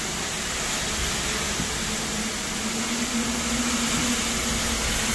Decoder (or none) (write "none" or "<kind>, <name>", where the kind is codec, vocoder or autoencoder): none